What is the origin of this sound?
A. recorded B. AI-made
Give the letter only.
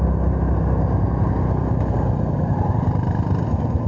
A